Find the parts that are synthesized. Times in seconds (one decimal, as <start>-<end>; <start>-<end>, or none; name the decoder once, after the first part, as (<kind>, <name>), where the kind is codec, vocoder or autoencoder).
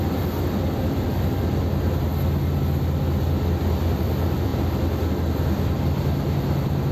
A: 0.0-2.1 (vocoder, BigVGAN v2); 3.2-4.5; 5.1-6.9